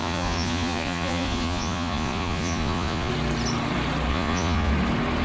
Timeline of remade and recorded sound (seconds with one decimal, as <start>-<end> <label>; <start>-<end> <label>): 0.0-3.1 remade; 3.1-4.1 recorded; 4.1-4.7 remade; 4.7-5.2 recorded

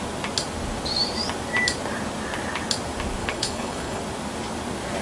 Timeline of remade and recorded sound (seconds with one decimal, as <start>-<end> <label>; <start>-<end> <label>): 0.0-3.2 recorded; 3.2-4.0 remade; 4.0-5.0 recorded

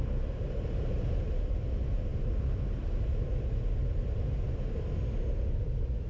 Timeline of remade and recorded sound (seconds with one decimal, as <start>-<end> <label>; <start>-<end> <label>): 0.0-6.1 recorded

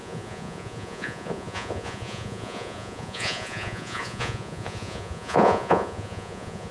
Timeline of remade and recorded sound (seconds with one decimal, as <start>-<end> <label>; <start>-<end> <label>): 0.0-6.7 remade

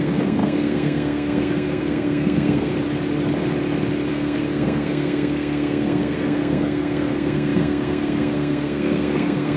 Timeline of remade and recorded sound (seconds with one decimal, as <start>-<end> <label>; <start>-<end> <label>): 0.0-2.7 remade; 2.7-4.1 recorded; 4.1-9.6 remade

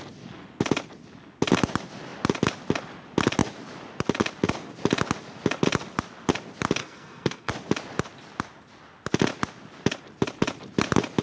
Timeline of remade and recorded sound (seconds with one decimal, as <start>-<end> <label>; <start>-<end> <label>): 0.0-6.8 recorded; 6.8-7.5 remade; 7.5-11.2 recorded